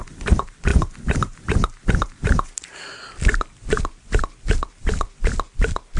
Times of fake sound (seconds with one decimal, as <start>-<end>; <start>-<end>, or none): none